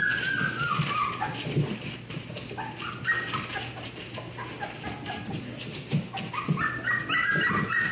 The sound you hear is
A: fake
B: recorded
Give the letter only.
B